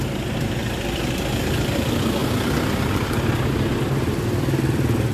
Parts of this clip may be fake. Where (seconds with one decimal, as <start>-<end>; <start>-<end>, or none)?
0.0-5.1